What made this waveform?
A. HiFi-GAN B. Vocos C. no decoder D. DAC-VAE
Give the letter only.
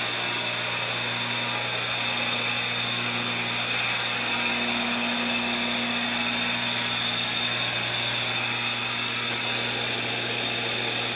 C